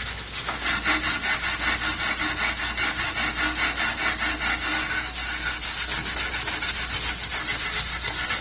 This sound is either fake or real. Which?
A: real